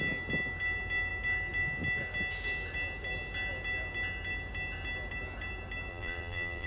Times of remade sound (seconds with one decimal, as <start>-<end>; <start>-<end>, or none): 5.9-6.7